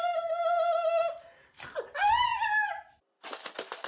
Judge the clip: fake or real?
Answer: real